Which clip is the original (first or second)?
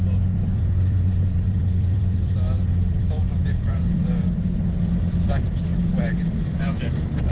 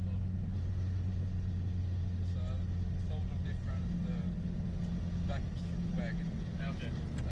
second